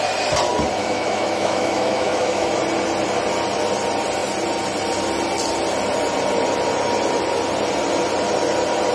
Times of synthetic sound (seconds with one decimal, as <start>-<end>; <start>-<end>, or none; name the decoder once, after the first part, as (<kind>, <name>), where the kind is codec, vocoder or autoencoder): 0.8-2.5 (autoencoder, DAC-VAE)